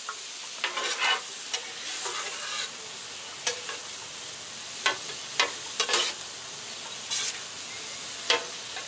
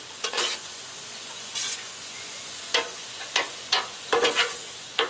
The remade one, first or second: second